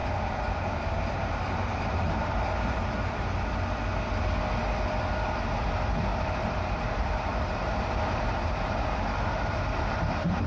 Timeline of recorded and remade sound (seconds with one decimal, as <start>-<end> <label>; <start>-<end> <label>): 0.0-2.8 remade; 2.8-6.1 recorded; 6.1-10.5 remade